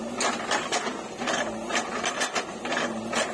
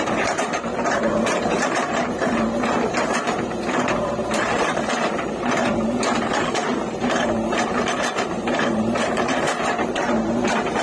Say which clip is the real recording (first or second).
first